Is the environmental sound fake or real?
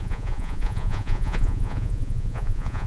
fake